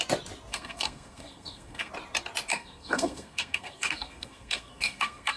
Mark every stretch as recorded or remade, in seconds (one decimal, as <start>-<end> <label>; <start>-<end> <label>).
0.0-0.5 recorded; 0.5-1.9 remade; 1.9-2.5 recorded; 2.5-5.4 remade